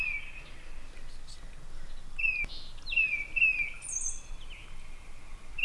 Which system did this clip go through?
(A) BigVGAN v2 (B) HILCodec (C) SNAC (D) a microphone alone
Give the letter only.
D